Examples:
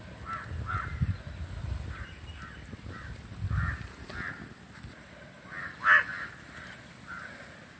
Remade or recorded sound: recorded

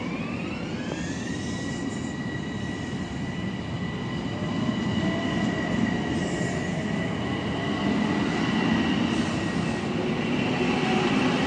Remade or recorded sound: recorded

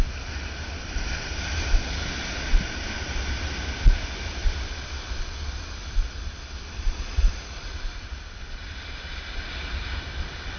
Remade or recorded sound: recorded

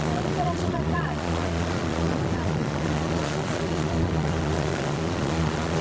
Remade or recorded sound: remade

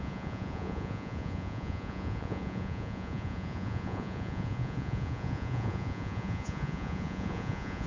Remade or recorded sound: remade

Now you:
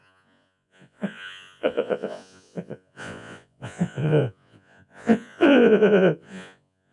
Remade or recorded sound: remade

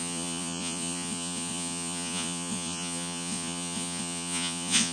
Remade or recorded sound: remade